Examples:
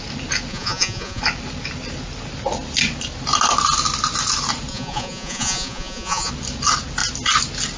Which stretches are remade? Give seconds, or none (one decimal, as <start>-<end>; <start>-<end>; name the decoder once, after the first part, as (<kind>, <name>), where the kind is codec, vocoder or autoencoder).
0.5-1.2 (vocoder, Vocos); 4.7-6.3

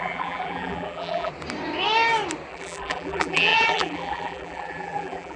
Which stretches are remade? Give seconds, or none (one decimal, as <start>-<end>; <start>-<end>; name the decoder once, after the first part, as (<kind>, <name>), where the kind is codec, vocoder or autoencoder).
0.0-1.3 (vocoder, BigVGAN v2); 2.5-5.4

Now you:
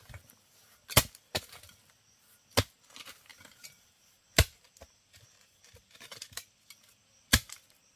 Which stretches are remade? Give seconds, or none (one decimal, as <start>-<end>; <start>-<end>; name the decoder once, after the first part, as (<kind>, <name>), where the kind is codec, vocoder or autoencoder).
3.3-5.6 (vocoder, BigVGAN v2)

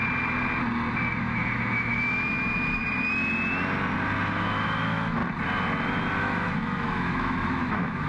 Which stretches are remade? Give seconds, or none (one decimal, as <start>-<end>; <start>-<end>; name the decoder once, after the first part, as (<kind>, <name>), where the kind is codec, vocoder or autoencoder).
1.2-2.8 (autoencoder, DAC-VAE); 4.3-5.2; 6.2-8.1

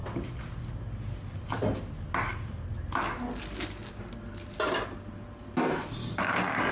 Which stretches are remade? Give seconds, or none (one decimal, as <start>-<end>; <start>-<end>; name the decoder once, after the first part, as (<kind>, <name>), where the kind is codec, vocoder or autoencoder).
6.0-6.7 (codec, DAC)

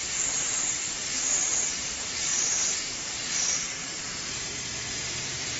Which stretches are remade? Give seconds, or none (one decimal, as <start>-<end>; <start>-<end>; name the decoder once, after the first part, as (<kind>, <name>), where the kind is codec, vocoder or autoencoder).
0.0-5.6 (vocoder, BigVGAN v2)

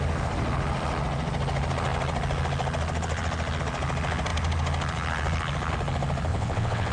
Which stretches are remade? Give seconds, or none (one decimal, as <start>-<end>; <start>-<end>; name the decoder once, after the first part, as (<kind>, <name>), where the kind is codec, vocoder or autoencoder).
6.3-6.9 (vocoder, WaveNeXt)

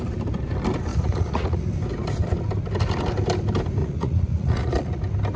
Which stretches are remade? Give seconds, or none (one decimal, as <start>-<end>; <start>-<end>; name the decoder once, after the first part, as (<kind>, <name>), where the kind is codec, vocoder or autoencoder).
0.9-1.7 (vocoder, Vocos); 3.8-5.0